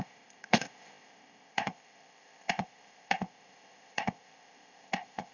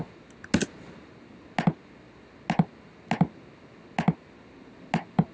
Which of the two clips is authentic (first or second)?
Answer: second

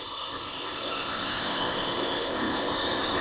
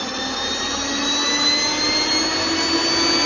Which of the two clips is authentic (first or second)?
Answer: second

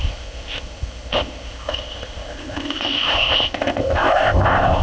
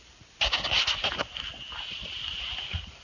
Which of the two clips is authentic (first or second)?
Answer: second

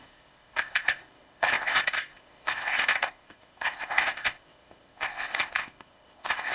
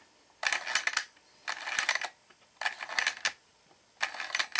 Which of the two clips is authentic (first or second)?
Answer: second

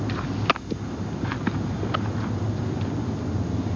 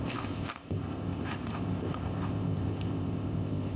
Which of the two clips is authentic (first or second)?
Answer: first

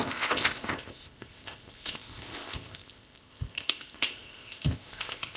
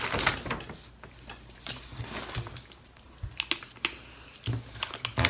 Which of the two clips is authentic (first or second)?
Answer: second